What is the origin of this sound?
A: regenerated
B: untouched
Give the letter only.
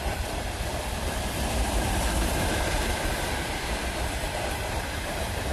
A